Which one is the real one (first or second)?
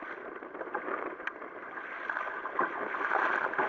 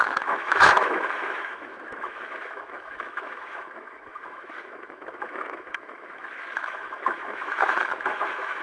first